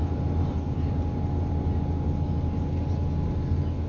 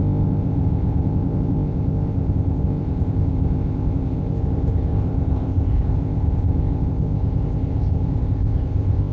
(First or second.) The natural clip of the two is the first